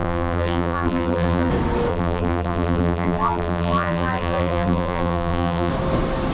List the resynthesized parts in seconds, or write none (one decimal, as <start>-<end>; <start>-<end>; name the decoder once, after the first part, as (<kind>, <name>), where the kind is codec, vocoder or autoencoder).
0.0-1.5 (vocoder, BigVGAN v2); 1.9-5.7